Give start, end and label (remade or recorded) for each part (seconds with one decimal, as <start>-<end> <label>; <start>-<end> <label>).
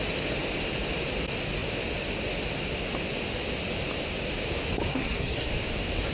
0.0-4.9 recorded; 4.9-5.5 remade; 5.5-6.1 recorded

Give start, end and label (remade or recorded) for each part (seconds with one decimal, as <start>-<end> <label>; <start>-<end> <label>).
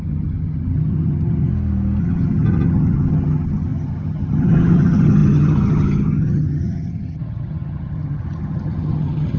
0.0-1.5 remade; 1.5-2.0 recorded; 2.0-9.4 remade